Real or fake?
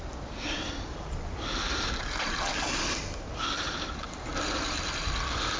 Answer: real